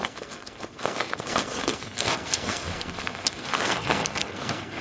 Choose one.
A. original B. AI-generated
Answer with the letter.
B